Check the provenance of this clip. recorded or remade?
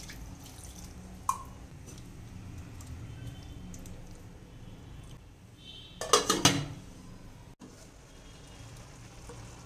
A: recorded